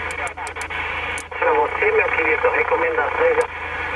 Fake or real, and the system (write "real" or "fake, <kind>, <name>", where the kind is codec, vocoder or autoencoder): real